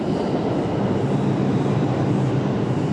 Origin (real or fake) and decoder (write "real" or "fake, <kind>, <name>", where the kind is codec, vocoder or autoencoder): real